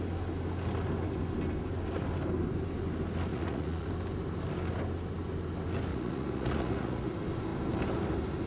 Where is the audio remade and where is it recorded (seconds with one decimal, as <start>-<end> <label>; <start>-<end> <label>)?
0.0-3.3 recorded; 3.3-3.9 remade; 3.9-5.9 recorded; 5.9-7.1 remade; 7.1-8.5 recorded